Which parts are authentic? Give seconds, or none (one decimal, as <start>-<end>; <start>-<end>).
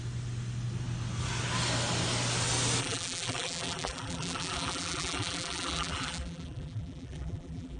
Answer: 0.0-2.8